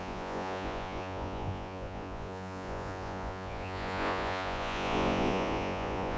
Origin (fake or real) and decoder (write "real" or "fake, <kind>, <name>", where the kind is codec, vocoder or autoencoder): fake, vocoder, Vocos